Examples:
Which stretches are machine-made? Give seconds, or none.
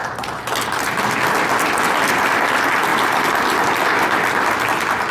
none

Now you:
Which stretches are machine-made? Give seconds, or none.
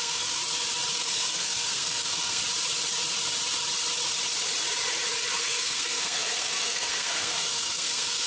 0.0-0.4 (codec, SNAC); 1.0-2.4; 5.4-8.3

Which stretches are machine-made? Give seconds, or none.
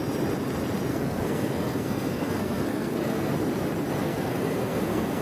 0.9-3.3 (codec, SNAC); 4.0-5.2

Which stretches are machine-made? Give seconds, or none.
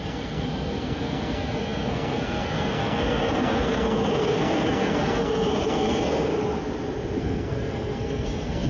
0.0-6.3 (codec, SNAC); 7.2-8.7